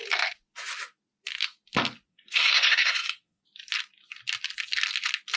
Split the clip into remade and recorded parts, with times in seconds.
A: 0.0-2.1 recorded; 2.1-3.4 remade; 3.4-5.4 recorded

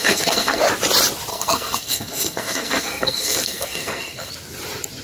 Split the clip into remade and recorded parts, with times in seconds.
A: 0.0-0.6 remade; 0.6-1.3 recorded; 1.3-4.3 remade; 4.3-5.0 recorded

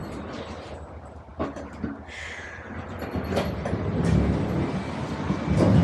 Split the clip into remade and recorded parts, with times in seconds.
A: 0.0-5.8 recorded

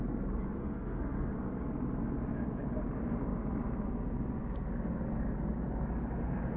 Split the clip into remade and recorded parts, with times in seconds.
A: 0.0-0.6 recorded; 0.6-1.3 remade; 1.3-6.6 recorded

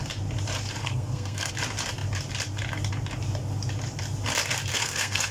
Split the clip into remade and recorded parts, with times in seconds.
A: 0.0-0.8 recorded; 0.8-1.5 remade; 1.5-4.7 recorded; 4.7-5.3 remade

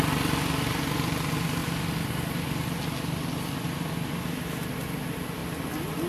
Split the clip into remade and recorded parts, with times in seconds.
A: 0.0-6.1 recorded

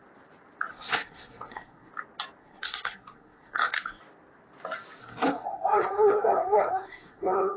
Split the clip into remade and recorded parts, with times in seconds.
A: 0.0-0.7 recorded; 0.7-1.9 remade; 1.9-2.4 recorded; 2.4-4.0 remade; 4.0-5.0 recorded; 5.0-7.6 remade

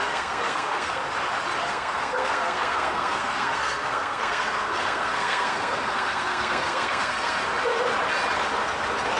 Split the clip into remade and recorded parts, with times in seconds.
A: 0.0-1.0 remade; 1.0-1.6 recorded; 1.6-7.4 remade; 7.4-9.2 recorded